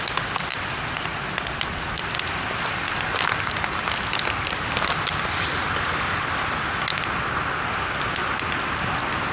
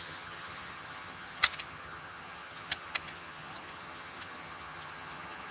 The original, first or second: first